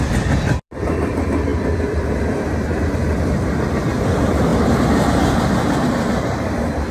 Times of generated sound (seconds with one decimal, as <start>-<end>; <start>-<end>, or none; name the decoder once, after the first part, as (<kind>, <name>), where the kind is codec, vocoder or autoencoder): 0.0-6.9 (vocoder, BigVGAN v2)